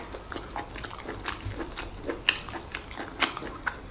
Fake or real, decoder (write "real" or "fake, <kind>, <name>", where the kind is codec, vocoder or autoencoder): real